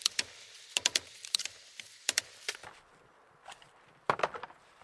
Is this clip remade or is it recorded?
remade